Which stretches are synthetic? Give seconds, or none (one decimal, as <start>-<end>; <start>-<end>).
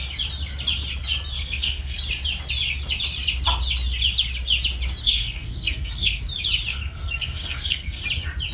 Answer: 1.4-2.0; 5.0-6.2; 6.7-8.0